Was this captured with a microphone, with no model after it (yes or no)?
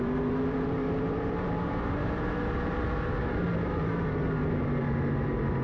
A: no